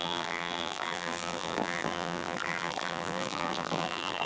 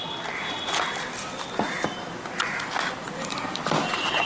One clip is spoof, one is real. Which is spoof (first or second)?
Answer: first